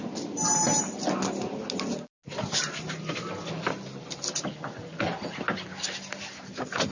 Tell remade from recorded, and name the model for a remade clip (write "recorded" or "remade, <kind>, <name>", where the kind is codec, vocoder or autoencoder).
recorded